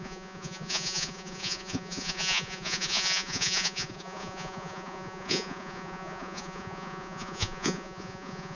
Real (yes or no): no